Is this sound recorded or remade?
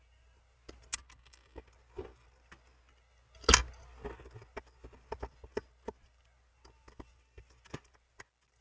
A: recorded